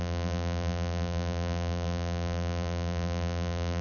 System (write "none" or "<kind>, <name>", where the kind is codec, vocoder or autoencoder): vocoder, BigVGAN v2